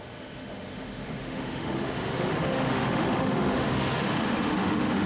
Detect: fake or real fake